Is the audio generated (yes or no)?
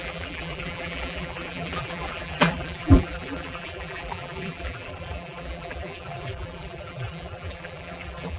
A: yes